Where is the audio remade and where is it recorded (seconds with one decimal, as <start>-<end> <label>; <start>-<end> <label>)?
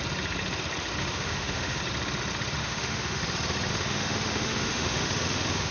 0.0-1.0 recorded; 1.0-1.8 remade; 1.8-2.6 recorded; 2.6-3.2 remade; 3.2-3.7 recorded; 3.7-5.7 remade